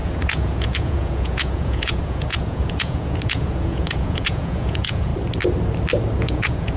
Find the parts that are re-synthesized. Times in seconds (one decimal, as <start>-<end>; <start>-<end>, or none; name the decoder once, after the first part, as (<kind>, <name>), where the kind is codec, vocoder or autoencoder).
0.0-5.1 (vocoder, Vocos); 6.2-6.8